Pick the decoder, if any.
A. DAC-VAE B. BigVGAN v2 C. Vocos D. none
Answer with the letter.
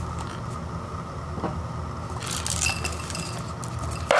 D